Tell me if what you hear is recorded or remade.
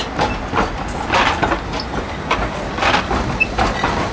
recorded